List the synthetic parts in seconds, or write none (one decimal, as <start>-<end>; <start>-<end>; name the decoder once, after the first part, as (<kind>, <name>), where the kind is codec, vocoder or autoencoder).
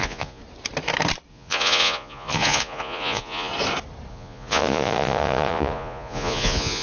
0.0-0.4 (vocoder, Vocos); 1.3-3.5; 4.1-6.8